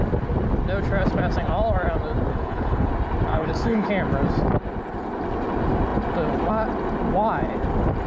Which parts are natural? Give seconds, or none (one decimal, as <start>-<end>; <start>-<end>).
0.0-2.3; 2.9-3.3; 3.9-8.1